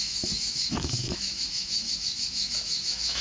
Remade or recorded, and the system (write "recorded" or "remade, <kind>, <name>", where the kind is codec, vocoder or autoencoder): remade, autoencoder, DAC-VAE